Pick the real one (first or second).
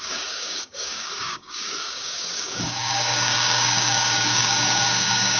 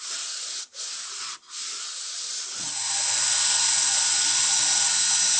second